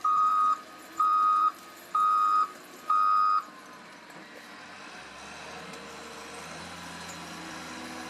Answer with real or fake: fake